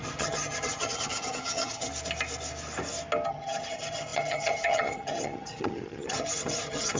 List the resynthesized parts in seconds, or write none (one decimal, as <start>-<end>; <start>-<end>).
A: 0.0-1.9; 3.3-7.0

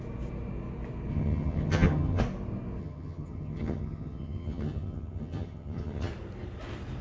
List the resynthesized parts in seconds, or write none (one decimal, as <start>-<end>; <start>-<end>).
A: 1.1-2.2; 2.8-6.1

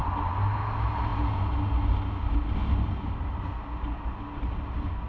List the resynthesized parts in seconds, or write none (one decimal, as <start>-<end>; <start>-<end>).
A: none